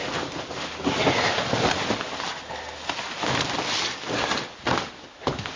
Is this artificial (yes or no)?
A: no